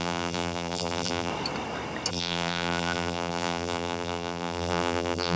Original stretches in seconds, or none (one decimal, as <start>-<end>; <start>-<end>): 1.3-2.1